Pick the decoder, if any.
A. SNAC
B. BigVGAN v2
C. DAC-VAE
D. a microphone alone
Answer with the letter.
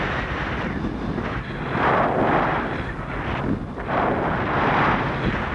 D